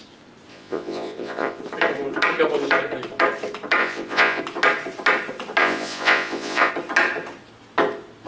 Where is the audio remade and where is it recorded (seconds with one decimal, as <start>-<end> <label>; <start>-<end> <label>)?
0.0-0.5 recorded; 0.5-1.6 remade; 1.6-3.8 recorded; 3.8-4.4 remade; 4.4-5.6 recorded; 5.6-6.7 remade; 6.7-8.3 recorded

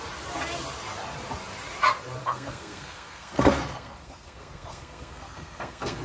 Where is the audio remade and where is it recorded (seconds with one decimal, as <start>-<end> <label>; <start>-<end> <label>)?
0.0-2.2 recorded; 2.2-6.0 remade

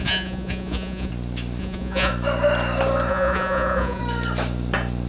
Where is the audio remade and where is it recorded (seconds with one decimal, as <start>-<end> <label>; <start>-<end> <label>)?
0.0-1.1 remade; 1.1-1.6 recorded; 1.6-2.1 remade; 2.1-3.1 recorded; 3.1-4.0 remade; 4.0-5.1 recorded

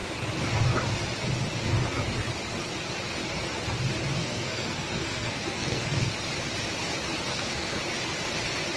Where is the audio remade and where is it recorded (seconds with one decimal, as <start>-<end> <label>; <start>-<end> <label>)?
0.0-4.2 recorded; 4.2-6.1 remade; 6.1-7.3 recorded; 7.3-7.8 remade; 7.8-8.8 recorded

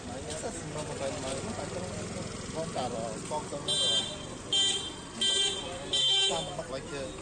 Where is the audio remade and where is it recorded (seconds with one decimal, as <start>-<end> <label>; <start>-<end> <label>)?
0.0-6.0 recorded; 6.0-6.7 remade; 6.7-7.2 recorded

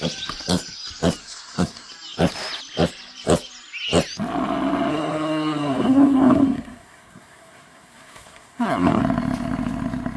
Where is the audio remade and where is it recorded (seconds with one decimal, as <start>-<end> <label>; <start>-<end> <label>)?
0.0-1.2 recorded; 1.2-1.9 remade; 1.9-4.9 recorded; 4.9-9.0 remade; 9.0-10.2 recorded

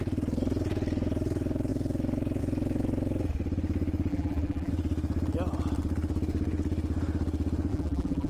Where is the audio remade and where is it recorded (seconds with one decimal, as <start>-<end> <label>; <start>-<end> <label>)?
0.0-4.1 recorded; 4.1-4.7 remade; 4.7-7.7 recorded; 7.7-8.3 remade